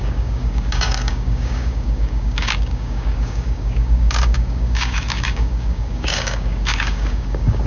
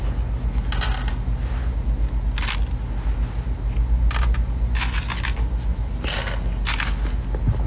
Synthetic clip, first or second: first